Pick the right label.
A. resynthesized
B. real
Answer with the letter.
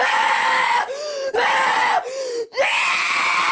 B